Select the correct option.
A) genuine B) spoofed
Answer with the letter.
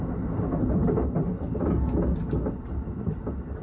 A